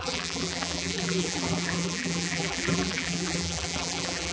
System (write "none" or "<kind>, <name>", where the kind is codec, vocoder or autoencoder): vocoder, BigVGAN v2